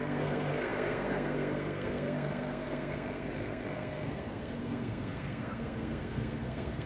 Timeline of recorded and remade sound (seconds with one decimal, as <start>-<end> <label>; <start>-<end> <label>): 0.0-6.9 remade